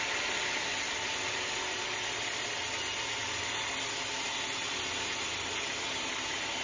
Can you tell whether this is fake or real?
real